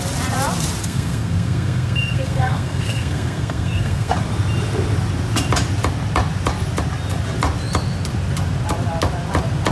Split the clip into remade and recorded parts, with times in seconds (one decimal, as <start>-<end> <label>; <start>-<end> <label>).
0.0-0.8 recorded; 0.8-4.1 remade; 4.1-9.7 recorded